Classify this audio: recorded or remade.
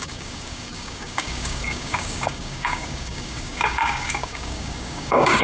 remade